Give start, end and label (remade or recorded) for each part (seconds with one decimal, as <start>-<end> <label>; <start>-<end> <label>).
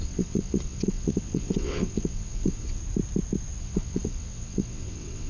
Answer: 0.0-2.8 remade; 2.8-3.6 recorded; 3.6-5.3 remade